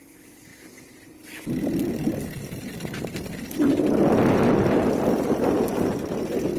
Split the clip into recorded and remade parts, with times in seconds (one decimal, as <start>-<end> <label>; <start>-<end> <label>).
0.0-6.6 recorded

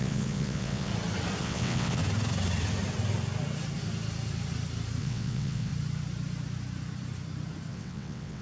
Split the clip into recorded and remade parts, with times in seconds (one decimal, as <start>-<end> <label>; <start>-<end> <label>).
0.0-0.9 remade; 0.9-1.4 recorded; 1.4-2.0 remade; 2.0-5.0 recorded; 5.0-5.7 remade; 5.7-7.7 recorded; 7.7-8.4 remade

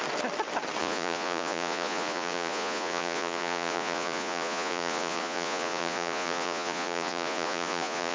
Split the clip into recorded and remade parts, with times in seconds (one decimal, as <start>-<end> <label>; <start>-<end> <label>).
0.0-0.8 recorded; 0.8-8.1 remade

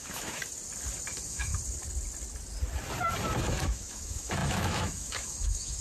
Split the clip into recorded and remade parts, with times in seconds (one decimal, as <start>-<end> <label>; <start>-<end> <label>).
0.0-0.4 remade; 0.4-1.1 recorded; 1.1-1.5 remade; 1.5-3.4 recorded; 3.4-5.8 remade

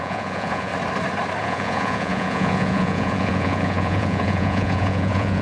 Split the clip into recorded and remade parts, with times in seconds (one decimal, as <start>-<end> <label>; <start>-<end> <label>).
0.0-0.7 remade; 0.7-1.4 recorded; 1.4-5.4 remade

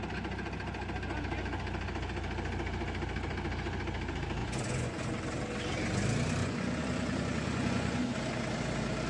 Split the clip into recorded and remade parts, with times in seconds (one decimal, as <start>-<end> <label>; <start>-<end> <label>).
0.0-4.4 recorded; 4.4-5.0 remade; 5.0-6.4 recorded; 6.4-8.1 remade; 8.1-9.1 recorded

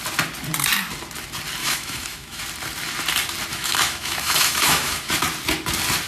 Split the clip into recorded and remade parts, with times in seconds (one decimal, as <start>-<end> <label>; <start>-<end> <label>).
0.0-1.6 recorded; 1.6-2.4 remade; 2.4-3.5 recorded; 3.5-5.1 remade; 5.1-6.1 recorded